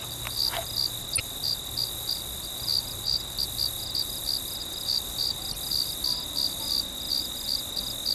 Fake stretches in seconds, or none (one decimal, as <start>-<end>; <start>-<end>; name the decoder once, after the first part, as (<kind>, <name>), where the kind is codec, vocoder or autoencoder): none